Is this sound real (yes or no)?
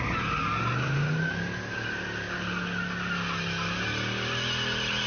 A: yes